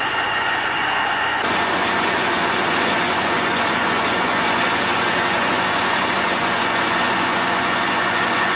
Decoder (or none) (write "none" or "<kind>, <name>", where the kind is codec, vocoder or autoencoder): vocoder, Vocos